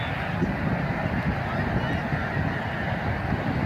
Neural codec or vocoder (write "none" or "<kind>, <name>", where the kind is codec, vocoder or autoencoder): none